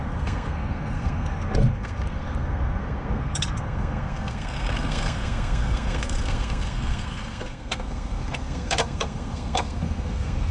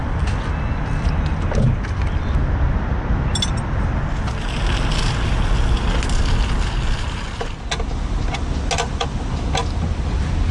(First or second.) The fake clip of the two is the first